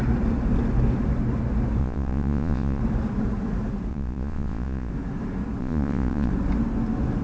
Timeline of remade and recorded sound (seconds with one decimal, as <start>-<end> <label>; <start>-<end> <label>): 0.0-1.8 recorded; 1.8-2.8 remade; 2.8-3.9 recorded; 3.9-4.9 remade; 4.9-5.6 recorded; 5.6-6.3 remade; 6.3-7.2 recorded